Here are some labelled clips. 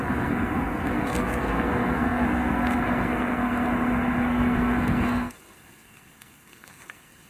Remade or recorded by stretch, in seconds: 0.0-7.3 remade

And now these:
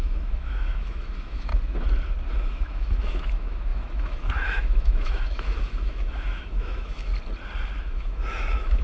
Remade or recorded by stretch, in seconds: 0.0-1.5 remade; 1.5-2.3 recorded; 2.3-7.1 remade; 7.1-7.8 recorded; 7.8-8.8 remade

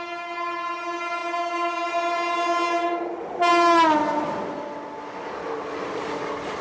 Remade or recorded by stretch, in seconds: 0.0-6.6 recorded

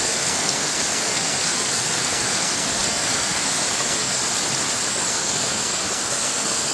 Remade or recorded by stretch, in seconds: 0.0-4.2 remade; 4.2-4.9 recorded; 4.9-6.7 remade

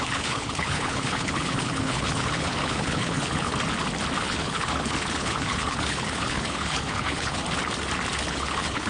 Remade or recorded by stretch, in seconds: 0.0-3.5 remade; 3.5-4.2 recorded; 4.2-7.4 remade; 7.4-8.3 recorded; 8.3-8.9 remade

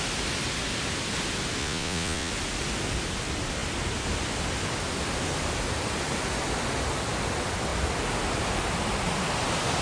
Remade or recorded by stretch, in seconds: 0.0-1.6 recorded; 1.6-2.3 remade; 2.3-9.8 recorded